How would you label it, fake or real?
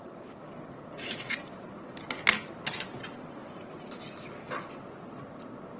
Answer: real